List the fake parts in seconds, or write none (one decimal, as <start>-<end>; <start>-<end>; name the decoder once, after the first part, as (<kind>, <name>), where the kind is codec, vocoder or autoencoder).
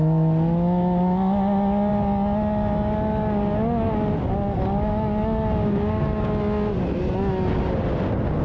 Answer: 5.6-6.3 (codec, DAC)